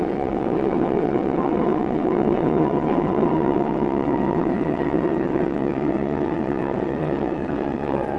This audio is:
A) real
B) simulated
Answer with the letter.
B